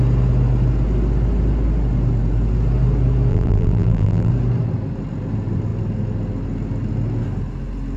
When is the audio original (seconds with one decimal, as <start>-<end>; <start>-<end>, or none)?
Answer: 0.0-3.3; 4.3-8.0